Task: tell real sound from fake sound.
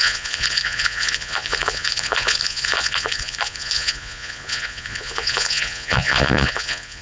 fake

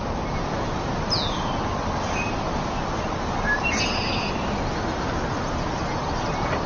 real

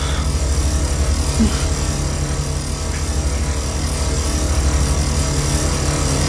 real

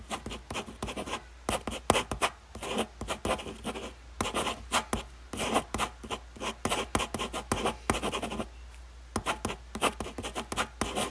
real